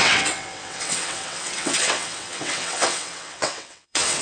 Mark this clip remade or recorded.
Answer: remade